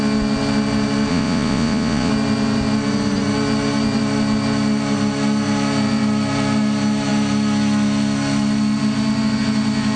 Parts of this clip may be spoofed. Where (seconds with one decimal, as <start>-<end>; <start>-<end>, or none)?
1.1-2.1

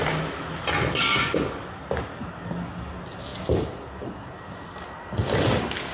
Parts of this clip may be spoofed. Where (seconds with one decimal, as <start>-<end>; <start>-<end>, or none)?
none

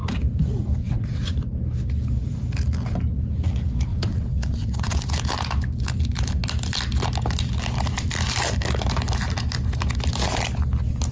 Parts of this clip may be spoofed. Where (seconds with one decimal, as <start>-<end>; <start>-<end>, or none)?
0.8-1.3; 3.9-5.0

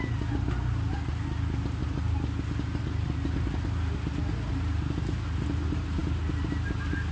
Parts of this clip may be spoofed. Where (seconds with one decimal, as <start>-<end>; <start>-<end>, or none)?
none

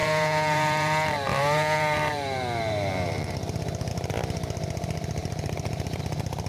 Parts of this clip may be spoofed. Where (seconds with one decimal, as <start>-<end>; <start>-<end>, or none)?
0.0-3.9; 5.2-6.0

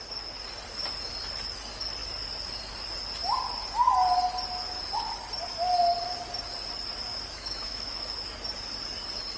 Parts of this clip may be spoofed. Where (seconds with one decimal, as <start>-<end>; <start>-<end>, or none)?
7.1-8.4